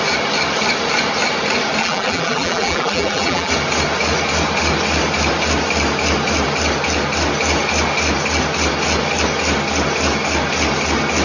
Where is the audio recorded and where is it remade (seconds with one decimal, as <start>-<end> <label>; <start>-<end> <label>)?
0.0-1.8 recorded; 1.8-3.5 remade; 3.5-11.2 recorded